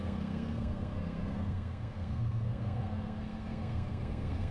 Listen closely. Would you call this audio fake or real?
fake